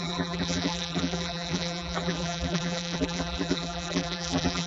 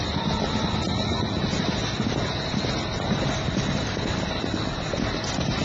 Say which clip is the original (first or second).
second